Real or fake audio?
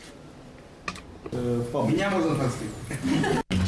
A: real